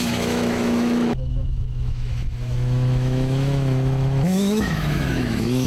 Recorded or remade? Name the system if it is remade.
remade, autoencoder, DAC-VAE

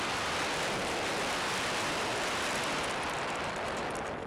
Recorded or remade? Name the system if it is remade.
recorded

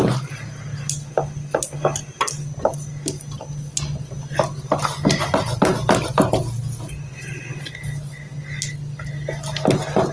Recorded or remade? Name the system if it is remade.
recorded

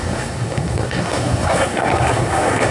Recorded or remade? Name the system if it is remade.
remade, codec, SNAC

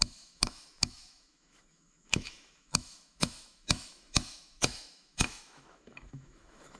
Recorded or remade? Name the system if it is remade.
remade, autoencoder, DAC-VAE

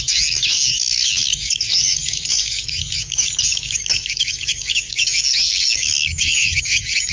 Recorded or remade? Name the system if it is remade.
remade, autoencoder, DAC-VAE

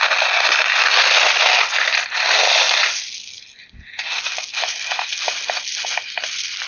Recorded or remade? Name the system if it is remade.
recorded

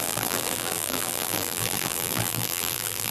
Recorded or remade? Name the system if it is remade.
remade, vocoder, BigVGAN v2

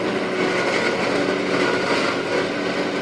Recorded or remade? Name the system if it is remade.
recorded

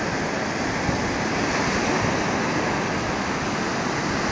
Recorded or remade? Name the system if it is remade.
recorded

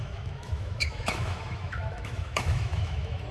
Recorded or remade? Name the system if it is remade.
remade, autoencoder, DAC-VAE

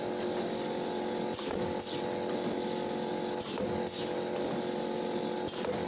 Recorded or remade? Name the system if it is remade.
recorded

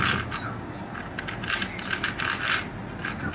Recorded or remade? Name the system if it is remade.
recorded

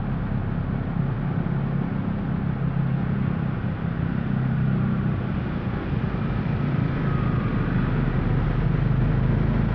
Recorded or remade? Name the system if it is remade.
recorded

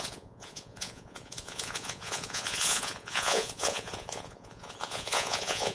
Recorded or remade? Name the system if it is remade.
remade, vocoder, Vocos